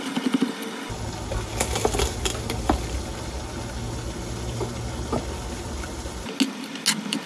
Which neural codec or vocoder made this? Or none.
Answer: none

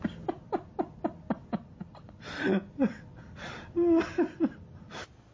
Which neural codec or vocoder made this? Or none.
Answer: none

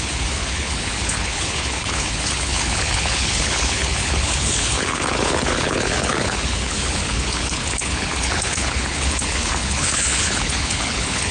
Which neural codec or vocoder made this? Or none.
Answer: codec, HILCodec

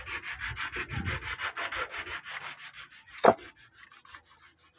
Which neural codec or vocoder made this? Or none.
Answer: none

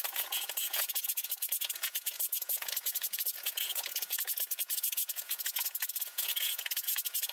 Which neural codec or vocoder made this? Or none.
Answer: vocoder, Vocos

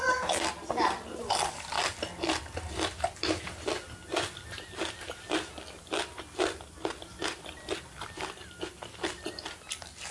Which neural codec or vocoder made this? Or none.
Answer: none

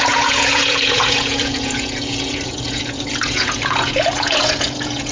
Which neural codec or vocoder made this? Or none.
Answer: vocoder, Vocos